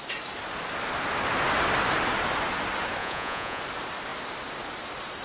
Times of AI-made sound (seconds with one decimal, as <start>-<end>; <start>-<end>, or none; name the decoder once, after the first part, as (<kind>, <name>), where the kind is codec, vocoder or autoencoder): 3.0-3.6 (vocoder, Vocos)

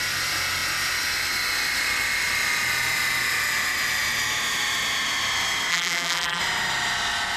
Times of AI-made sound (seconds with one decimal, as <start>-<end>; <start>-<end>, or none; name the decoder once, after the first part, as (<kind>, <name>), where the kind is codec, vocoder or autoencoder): 5.7-6.4 (vocoder, BigVGAN v2)